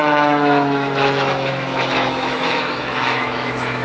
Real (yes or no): no